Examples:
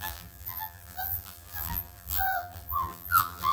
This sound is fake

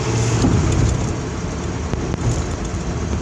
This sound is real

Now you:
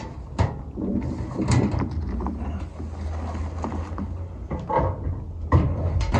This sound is real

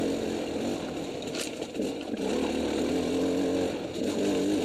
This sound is real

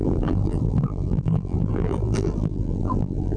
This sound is fake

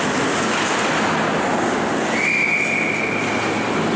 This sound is real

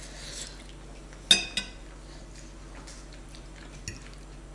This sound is real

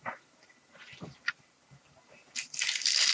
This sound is real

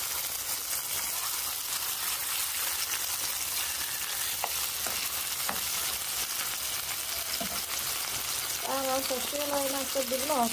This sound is real